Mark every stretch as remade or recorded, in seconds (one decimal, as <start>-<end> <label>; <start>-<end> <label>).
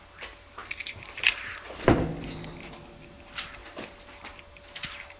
0.0-5.2 recorded